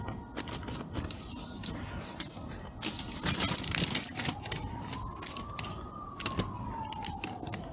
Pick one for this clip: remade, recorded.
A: recorded